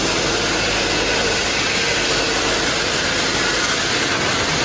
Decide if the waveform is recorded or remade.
recorded